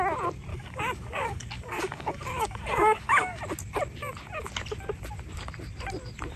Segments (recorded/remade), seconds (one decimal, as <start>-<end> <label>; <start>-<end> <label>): 0.0-0.5 recorded; 0.5-3.4 remade; 3.4-6.4 recorded